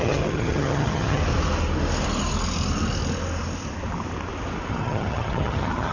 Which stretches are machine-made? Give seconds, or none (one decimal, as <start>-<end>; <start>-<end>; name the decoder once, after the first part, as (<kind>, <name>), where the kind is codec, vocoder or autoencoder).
0.0-1.2 (vocoder, HiFi-GAN); 4.7-5.9